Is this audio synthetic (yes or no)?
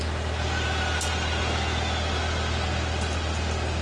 no